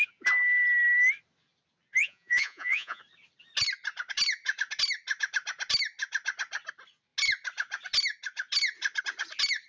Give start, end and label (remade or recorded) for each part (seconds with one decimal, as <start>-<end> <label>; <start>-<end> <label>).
0.0-2.0 recorded; 2.0-3.0 remade; 3.0-9.7 recorded